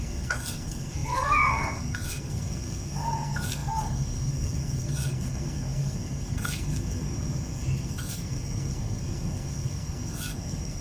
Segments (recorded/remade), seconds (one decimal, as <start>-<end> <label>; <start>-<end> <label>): 0.0-10.8 remade